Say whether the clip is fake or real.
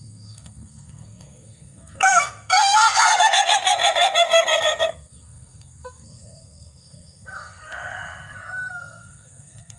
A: fake